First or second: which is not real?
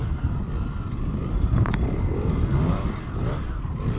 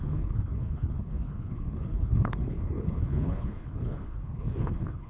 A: second